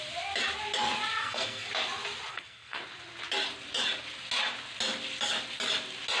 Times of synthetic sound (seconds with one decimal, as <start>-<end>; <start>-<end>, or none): 1.2-1.7; 2.3-2.8